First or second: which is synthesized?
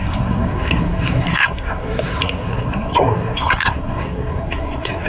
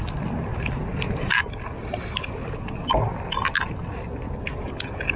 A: first